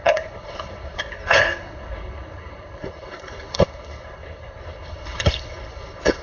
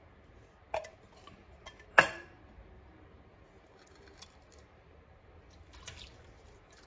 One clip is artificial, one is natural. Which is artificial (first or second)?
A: first